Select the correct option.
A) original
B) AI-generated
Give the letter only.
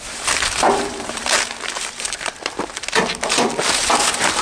B